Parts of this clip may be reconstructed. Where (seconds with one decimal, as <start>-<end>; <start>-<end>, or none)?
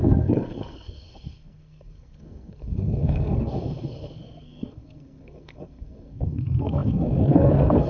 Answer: 0.0-7.9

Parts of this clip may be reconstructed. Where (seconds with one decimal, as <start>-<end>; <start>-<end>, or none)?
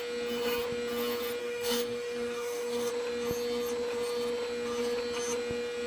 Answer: 1.4-2.9